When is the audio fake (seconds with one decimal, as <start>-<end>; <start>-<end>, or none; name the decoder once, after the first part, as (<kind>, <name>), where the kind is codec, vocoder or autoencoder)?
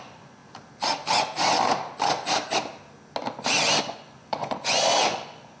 0.0-0.4 (vocoder, Vocos); 3.8-5.6